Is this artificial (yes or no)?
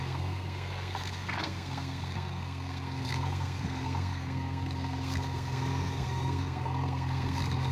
yes